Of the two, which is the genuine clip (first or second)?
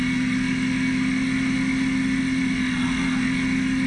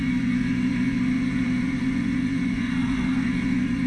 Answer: first